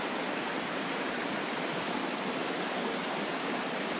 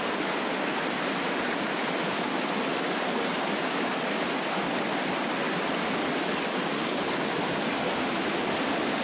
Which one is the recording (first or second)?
second